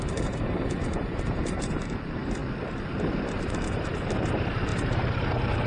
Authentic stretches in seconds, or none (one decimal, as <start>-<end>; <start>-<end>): 2.4-3.7

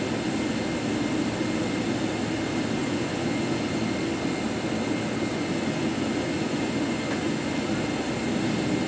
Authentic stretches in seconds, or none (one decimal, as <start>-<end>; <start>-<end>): 0.0-2.8; 3.8-5.3; 7.7-8.9

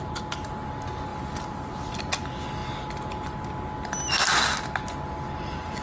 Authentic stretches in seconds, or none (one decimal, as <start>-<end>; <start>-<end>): 0.0-1.1; 2.0-5.8

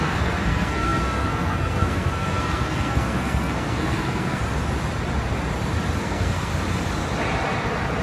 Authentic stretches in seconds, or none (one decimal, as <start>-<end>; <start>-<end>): 4.4-6.0; 6.5-8.0